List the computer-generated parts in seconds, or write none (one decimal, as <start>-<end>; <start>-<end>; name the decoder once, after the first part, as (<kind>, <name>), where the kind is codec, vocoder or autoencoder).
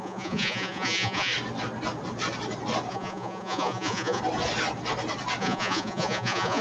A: 0.0-1.3 (vocoder, Vocos); 2.9-4.2; 5.4-6.6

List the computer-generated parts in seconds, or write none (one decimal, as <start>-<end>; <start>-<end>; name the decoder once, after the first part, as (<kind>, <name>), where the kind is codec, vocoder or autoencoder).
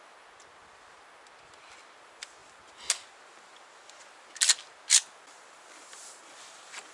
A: none